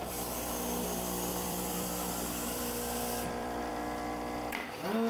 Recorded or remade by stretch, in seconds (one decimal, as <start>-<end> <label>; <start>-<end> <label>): 0.0-1.3 recorded; 1.3-3.7 remade; 3.7-5.1 recorded